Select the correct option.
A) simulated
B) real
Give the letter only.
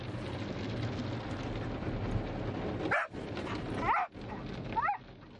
B